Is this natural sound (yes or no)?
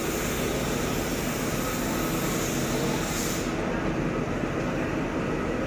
yes